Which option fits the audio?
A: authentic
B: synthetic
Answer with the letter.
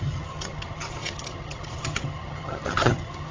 B